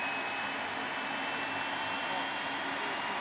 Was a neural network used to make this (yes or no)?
no